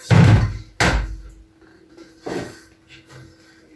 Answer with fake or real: real